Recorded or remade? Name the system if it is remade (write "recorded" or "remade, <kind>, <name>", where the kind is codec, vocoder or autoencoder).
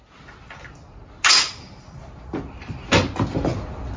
recorded